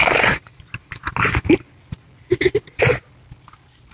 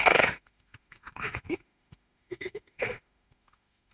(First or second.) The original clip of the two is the first